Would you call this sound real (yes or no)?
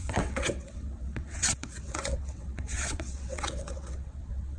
no